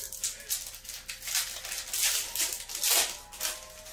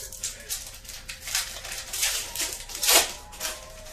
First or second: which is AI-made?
second